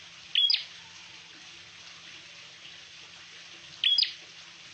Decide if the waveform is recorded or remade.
recorded